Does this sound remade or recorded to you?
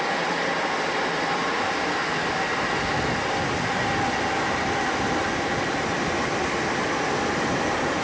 recorded